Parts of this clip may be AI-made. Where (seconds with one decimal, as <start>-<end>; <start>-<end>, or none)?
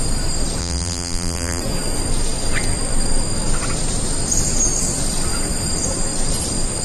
0.6-1.6